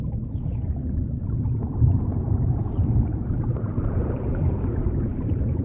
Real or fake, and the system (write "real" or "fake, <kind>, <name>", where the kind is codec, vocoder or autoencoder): fake, vocoder, BigVGAN v2